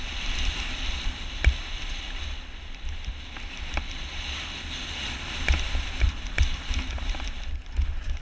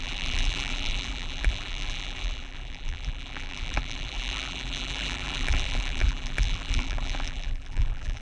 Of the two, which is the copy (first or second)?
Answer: second